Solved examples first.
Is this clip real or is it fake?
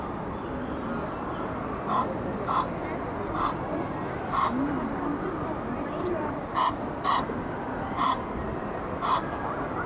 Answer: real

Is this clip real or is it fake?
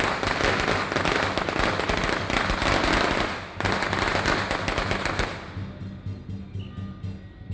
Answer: real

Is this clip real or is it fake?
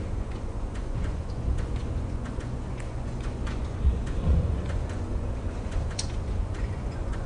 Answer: fake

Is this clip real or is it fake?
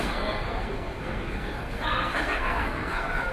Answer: fake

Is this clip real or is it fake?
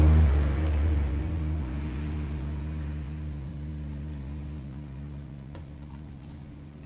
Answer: fake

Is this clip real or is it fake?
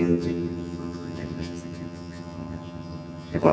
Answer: fake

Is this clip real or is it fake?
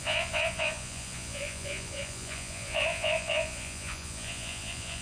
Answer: fake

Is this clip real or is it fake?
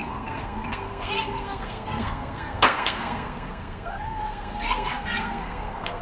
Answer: fake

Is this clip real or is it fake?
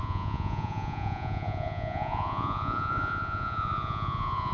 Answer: fake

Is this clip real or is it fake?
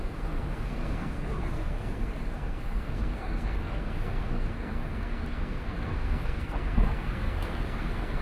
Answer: fake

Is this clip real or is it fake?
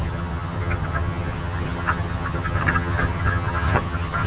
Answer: fake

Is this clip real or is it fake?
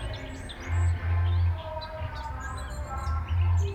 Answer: real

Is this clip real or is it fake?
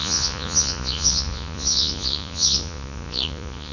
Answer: fake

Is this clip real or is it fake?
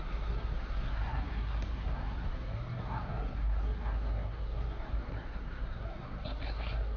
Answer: fake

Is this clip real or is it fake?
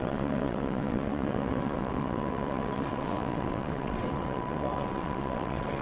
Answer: fake